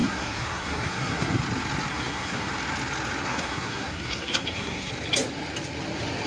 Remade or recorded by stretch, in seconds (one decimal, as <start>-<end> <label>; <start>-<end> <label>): 0.0-1.4 remade; 1.4-1.9 recorded; 1.9-2.5 remade; 2.5-3.2 recorded; 3.2-4.9 remade; 4.9-6.3 recorded